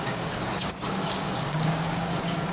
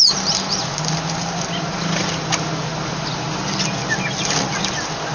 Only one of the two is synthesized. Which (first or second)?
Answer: first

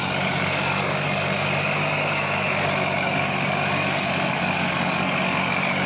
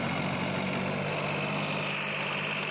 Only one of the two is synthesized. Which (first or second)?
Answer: first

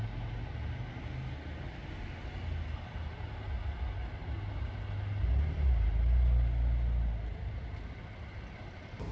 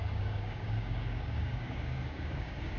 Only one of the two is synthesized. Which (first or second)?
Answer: second